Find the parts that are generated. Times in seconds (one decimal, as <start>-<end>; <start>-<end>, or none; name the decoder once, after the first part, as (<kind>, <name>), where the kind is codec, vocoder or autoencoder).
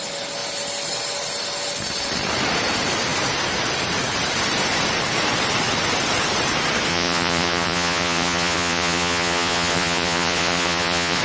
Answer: 6.9-11.2 (vocoder, Vocos)